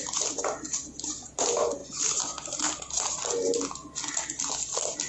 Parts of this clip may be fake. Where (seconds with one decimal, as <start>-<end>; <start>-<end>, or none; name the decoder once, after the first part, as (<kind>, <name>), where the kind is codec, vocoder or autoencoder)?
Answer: none